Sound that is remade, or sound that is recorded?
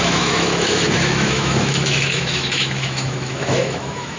remade